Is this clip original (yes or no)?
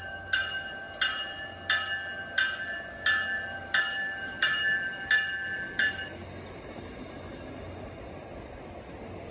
yes